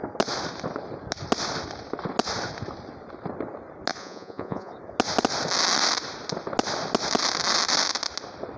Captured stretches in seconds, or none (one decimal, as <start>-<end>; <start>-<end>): 0.0-4.0; 4.7-8.6